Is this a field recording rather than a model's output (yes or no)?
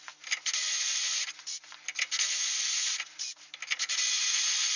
yes